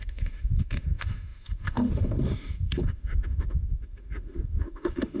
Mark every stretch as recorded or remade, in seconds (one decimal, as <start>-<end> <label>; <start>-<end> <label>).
0.0-5.2 remade